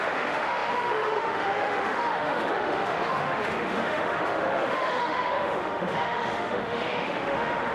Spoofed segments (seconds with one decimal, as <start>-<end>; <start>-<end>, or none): 0.0-7.7